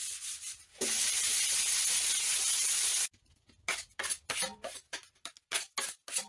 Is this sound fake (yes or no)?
no